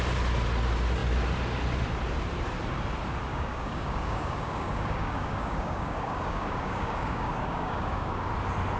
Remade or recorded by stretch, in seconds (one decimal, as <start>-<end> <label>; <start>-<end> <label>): 0.0-3.3 recorded; 3.3-8.3 remade; 8.3-8.8 recorded